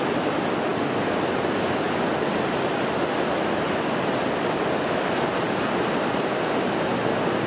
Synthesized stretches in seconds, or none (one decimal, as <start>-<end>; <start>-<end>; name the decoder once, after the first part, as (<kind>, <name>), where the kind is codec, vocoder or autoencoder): none